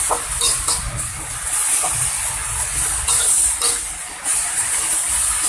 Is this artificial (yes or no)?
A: no